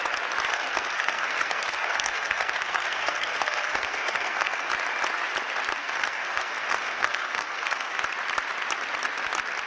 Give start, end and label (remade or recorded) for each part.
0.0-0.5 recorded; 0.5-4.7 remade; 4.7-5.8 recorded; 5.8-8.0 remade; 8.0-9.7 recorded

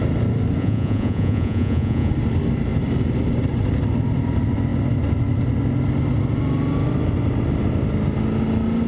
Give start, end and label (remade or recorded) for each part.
0.0-0.6 recorded; 0.6-2.1 remade; 2.1-8.9 recorded

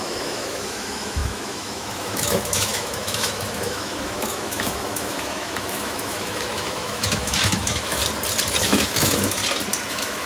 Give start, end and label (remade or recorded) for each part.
0.0-8.0 remade; 8.0-8.6 recorded; 8.6-9.4 remade; 9.4-9.9 recorded; 9.9-10.3 remade

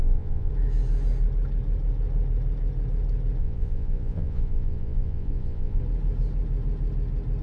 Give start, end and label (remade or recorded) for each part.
0.0-0.5 remade; 0.5-3.4 recorded; 3.4-5.8 remade; 5.8-7.4 recorded

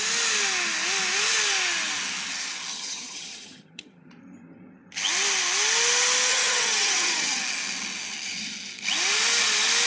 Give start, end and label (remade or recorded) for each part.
0.0-2.7 recorded; 2.7-4.1 remade; 4.1-6.3 recorded; 6.3-7.4 remade; 7.4-9.9 recorded

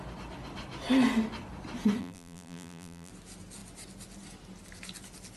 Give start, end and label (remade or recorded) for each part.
0.0-2.0 recorded; 2.0-3.1 remade; 3.1-5.4 recorded

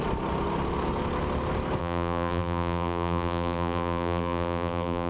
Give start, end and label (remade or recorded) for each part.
0.0-1.8 recorded; 1.8-5.1 remade

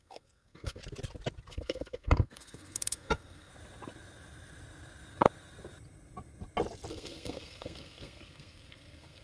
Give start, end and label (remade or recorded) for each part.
0.0-0.8 remade; 0.8-1.5 recorded; 1.5-3.5 remade; 3.5-6.9 recorded; 6.9-9.2 remade